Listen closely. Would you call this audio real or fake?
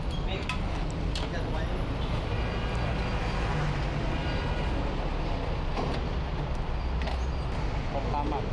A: real